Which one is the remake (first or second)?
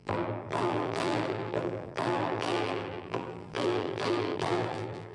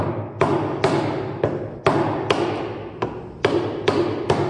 first